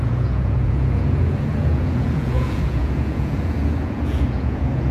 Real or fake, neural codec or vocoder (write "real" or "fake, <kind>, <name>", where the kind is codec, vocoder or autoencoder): fake, vocoder, Vocos